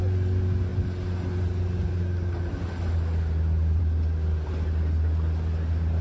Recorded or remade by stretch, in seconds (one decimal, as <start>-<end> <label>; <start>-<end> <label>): 0.0-6.0 recorded